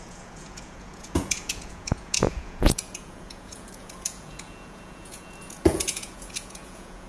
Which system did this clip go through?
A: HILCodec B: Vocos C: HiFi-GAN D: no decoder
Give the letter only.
B